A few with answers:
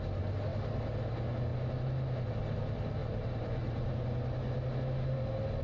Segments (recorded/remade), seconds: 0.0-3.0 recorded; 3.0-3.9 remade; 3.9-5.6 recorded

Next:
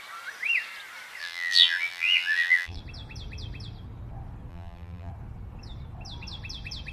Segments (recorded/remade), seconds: 0.0-1.2 recorded; 1.2-2.8 remade; 2.8-4.5 recorded; 4.5-5.1 remade; 5.1-6.9 recorded

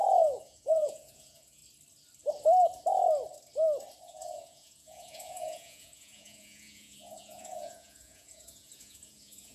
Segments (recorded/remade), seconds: 0.0-1.6 remade; 1.6-4.0 recorded; 4.0-9.5 remade

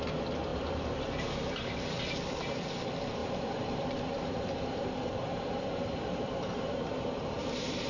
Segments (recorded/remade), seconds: 0.0-0.5 recorded; 0.5-1.7 remade; 1.7-3.2 recorded; 3.2-7.9 remade

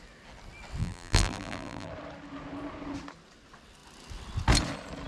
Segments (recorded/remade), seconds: 0.0-0.8 recorded; 0.8-1.9 remade; 1.9-5.1 recorded

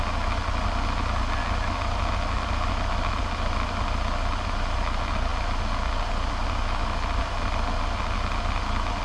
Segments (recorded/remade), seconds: 0.0-9.0 recorded

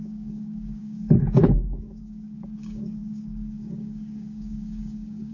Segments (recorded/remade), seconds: 0.0-5.3 remade